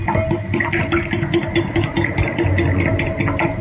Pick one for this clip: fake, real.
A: real